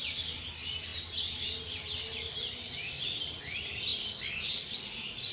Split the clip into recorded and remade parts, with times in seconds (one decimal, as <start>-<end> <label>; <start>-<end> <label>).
0.0-5.3 recorded